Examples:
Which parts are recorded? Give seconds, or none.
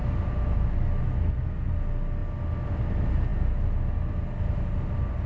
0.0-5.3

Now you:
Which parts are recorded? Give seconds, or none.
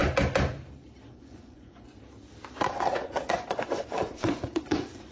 0.0-1.1; 1.9-2.7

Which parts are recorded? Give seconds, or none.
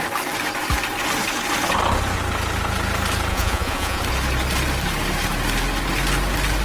0.0-3.3; 4.0-6.6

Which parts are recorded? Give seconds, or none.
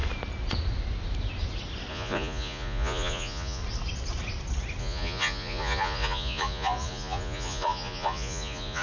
0.0-1.9; 3.6-4.8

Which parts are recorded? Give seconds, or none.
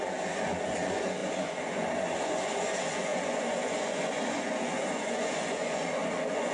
none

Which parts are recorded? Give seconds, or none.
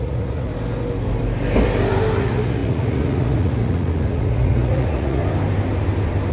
0.5-2.2; 5.2-6.3